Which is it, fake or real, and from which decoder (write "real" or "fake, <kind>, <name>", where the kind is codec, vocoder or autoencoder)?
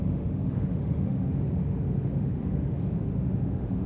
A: fake, autoencoder, DAC-VAE